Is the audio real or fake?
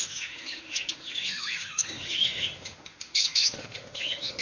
fake